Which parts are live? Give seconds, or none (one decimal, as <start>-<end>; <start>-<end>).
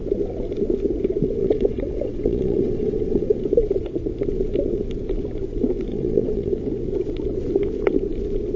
0.0-1.4; 3.4-5.9; 6.5-8.6